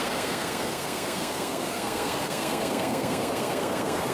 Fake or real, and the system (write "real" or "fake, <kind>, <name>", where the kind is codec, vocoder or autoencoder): fake, codec, SNAC